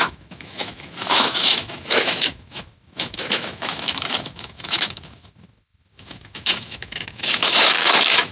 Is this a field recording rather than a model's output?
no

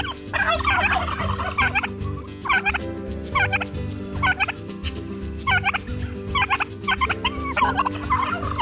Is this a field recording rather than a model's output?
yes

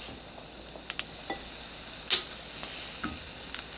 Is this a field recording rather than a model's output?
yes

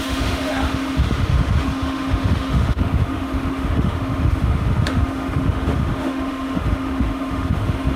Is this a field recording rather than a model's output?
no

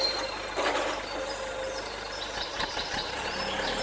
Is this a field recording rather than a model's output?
yes